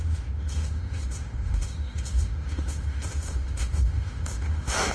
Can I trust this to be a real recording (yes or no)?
no